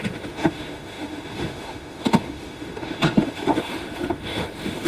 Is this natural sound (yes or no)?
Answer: no